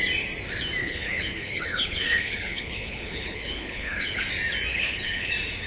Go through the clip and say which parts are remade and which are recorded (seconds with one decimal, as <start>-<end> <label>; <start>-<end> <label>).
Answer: 0.0-0.8 recorded; 0.8-4.2 remade; 4.2-4.7 recorded; 4.7-5.3 remade; 5.3-5.7 recorded